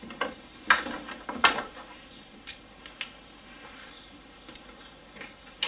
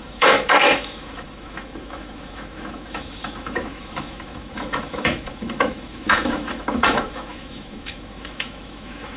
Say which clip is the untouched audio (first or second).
first